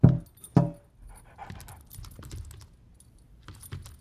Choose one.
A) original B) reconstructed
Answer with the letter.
A